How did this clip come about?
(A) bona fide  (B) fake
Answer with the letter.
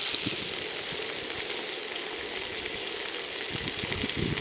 A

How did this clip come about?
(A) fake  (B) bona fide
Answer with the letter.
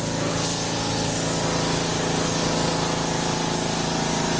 B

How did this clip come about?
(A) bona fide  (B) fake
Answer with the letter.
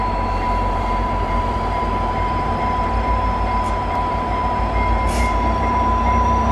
B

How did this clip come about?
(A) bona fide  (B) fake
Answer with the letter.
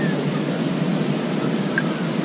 A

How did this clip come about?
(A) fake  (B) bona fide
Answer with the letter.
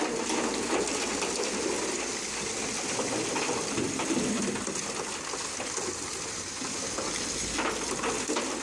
B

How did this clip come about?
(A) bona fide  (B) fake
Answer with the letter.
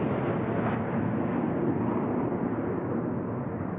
A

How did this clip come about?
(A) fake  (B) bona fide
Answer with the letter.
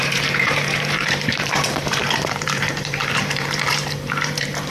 A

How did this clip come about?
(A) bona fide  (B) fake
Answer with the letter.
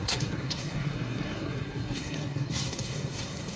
B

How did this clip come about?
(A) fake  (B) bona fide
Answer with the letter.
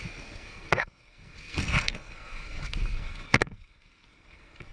A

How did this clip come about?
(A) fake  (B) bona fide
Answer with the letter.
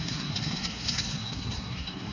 A